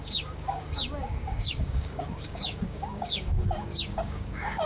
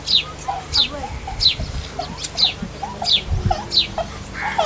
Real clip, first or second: second